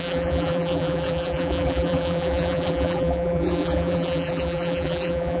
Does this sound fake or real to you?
fake